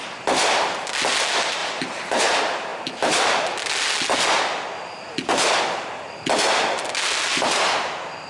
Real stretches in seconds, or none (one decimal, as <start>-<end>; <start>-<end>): 0.0-1.6; 2.2-7.3